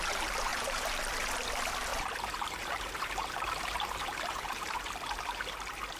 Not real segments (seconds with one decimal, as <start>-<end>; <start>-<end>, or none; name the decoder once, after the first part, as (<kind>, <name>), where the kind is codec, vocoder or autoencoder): 0.5-1.1 (vocoder, BigVGAN v2); 1.9-5.5